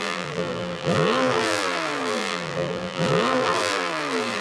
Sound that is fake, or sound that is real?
fake